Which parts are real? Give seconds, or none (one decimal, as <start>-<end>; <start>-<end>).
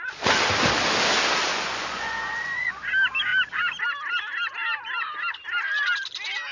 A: 0.0-1.5; 2.8-6.5